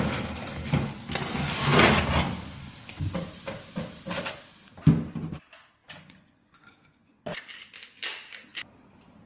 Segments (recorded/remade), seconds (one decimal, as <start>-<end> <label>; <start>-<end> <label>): 0.0-5.8 recorded; 5.8-7.4 remade; 7.4-9.3 recorded